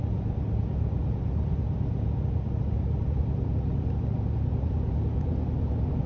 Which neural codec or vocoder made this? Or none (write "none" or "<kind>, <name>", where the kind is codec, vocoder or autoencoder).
none